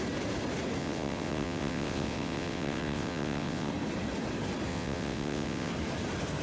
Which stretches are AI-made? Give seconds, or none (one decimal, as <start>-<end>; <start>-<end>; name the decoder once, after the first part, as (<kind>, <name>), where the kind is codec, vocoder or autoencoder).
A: 0.8-3.7 (vocoder, WaveNeXt); 4.7-5.7